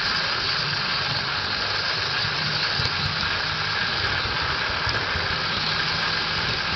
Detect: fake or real real